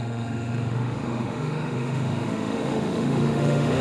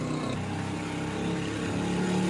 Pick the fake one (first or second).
first